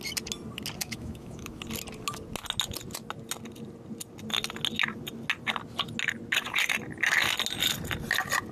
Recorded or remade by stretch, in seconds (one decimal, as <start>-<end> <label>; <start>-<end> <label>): 0.0-0.8 recorded; 0.8-1.6 remade; 1.6-8.5 recorded